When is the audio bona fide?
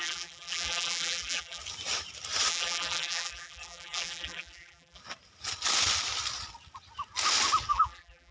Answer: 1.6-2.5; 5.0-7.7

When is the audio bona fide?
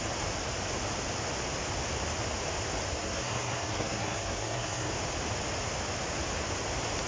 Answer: 0.0-2.9; 4.9-7.1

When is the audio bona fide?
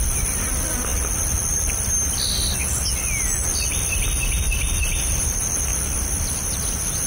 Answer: 0.9-5.2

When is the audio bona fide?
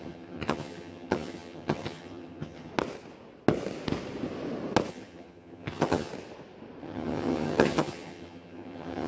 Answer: 2.7-4.9; 6.1-6.8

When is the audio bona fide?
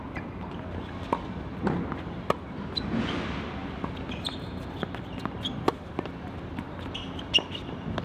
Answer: 0.0-8.0